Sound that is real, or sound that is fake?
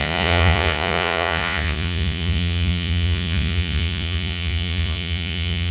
fake